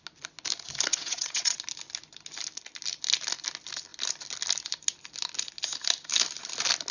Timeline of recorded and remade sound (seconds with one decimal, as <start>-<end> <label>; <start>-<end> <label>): 0.0-0.9 recorded; 0.9-1.6 remade; 1.6-6.9 recorded